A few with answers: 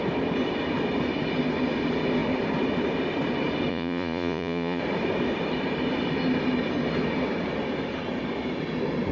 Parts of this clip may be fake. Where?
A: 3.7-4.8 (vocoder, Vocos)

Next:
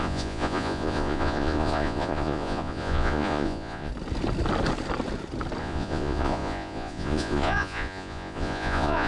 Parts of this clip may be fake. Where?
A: 0.0-3.9 (vocoder, Vocos); 5.6-9.1

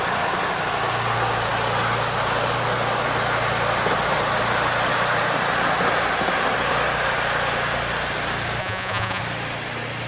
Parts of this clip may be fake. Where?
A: 8.6-9.2 (vocoder, Vocos)

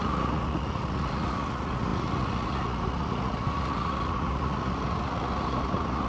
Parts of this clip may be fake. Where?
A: 0.0-6.1 (vocoder, Vocos)

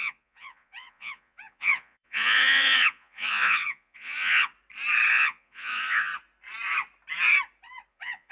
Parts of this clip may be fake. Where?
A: 0.0-4.5 (vocoder, Vocos); 5.1-6.1; 7.9-8.3

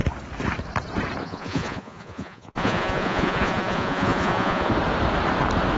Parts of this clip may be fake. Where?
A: 1.2-4.7 (vocoder, Vocos)

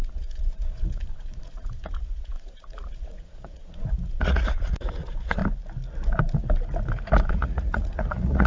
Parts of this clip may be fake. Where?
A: 0.0-5.4 (vocoder, Vocos); 7.2-8.5

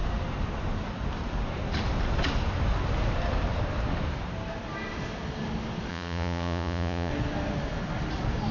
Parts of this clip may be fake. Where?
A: 5.9-7.1 (vocoder, Vocos)